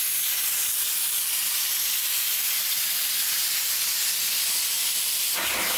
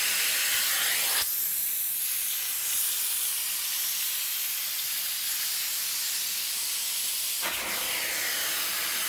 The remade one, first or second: first